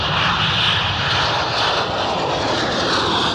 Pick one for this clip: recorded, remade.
recorded